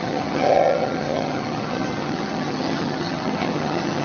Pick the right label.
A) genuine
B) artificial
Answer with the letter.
B